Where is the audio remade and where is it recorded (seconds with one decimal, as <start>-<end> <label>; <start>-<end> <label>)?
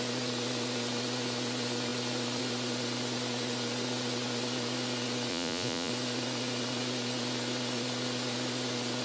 0.0-5.3 recorded; 5.3-5.9 remade; 5.9-9.0 recorded